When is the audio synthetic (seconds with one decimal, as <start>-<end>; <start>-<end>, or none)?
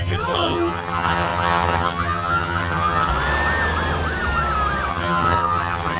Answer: 0.0-3.1; 4.9-6.0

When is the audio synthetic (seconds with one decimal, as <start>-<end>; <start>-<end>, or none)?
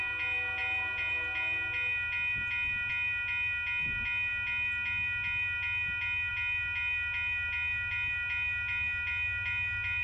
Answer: none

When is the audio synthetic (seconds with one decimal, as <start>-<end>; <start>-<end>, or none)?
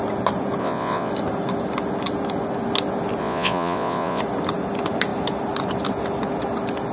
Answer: 0.6-1.1; 3.2-4.2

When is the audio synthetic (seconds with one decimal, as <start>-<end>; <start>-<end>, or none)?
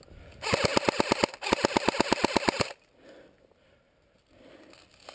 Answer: none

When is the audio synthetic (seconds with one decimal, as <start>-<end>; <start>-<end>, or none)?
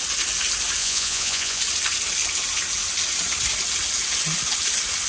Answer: 0.8-1.6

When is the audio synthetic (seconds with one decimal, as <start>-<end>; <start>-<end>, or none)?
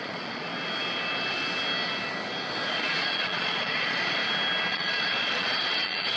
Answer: 0.0-0.5; 2.7-4.2; 4.7-6.2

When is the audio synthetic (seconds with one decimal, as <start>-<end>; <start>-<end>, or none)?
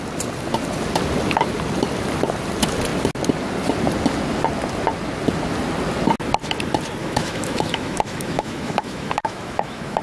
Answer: 7.0-10.0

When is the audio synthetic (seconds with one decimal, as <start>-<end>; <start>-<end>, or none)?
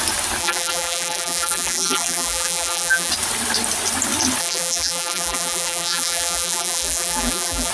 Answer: 0.4-3.1; 4.4-7.7